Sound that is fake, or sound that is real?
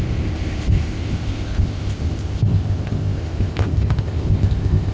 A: fake